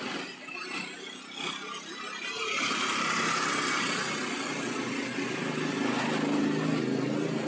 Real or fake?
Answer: real